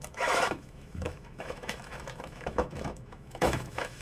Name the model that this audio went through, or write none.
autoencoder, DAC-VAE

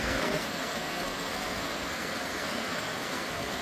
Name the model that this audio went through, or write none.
codec, SNAC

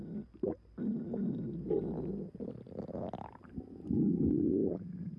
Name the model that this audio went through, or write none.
none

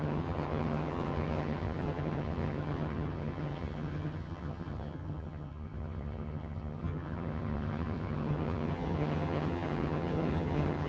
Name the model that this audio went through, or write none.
vocoder, HiFi-GAN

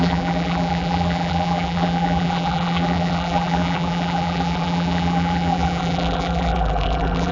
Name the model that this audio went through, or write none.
vocoder, BigVGAN v2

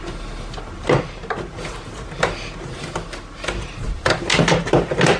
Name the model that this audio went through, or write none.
none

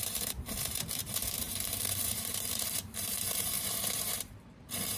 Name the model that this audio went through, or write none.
vocoder, BigVGAN v2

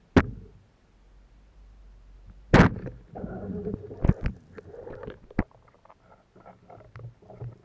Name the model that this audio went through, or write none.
none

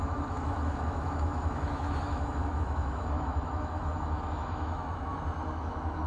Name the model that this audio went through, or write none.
autoencoder, DAC-VAE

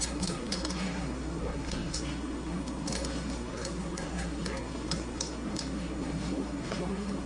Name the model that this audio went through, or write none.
codec, SNAC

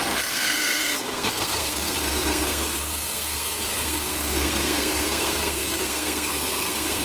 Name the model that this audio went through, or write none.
codec, SNAC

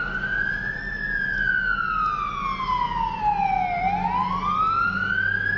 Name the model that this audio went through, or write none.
none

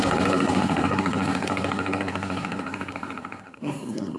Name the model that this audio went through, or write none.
codec, SNAC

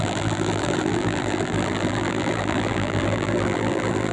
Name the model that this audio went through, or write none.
vocoder, BigVGAN v2